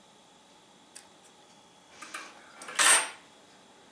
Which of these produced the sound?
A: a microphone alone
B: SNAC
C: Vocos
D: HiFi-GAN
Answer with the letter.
A